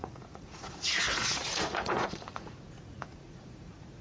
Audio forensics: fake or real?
fake